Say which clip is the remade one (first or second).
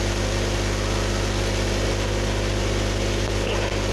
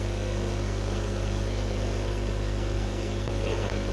second